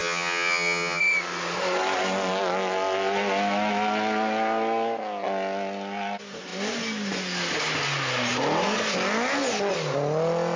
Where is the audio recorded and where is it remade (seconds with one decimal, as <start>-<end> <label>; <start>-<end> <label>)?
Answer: 0.0-1.0 remade; 1.0-10.6 recorded